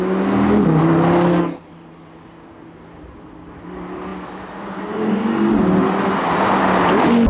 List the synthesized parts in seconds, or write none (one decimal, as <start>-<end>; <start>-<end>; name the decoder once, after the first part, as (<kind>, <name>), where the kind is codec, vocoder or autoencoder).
none